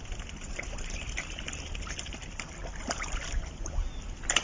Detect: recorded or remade recorded